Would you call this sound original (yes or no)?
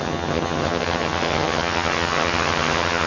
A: no